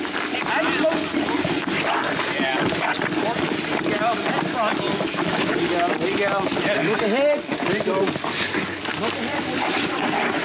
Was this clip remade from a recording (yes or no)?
no